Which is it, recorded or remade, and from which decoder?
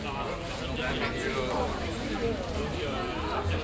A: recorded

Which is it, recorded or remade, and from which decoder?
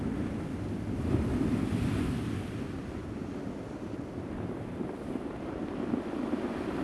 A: recorded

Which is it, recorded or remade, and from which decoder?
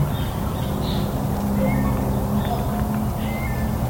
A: recorded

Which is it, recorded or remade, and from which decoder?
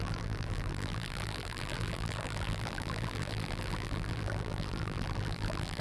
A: remade, vocoder, BigVGAN v2